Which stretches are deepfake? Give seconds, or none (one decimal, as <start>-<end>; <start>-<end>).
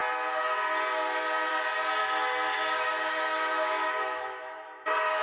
2.0-5.2